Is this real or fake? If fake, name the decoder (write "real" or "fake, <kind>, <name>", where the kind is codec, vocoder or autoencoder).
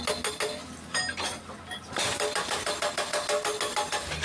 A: real